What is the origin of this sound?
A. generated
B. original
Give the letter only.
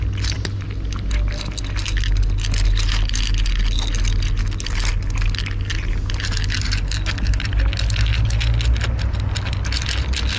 B